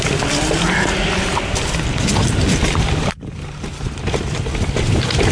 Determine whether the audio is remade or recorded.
remade